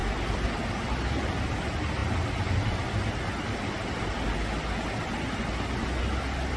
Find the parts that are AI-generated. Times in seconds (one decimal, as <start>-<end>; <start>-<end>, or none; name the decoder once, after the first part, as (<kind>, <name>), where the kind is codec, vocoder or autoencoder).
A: none